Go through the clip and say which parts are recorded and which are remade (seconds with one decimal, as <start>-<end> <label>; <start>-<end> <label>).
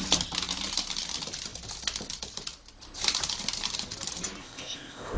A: 0.0-4.4 recorded; 4.4-5.2 remade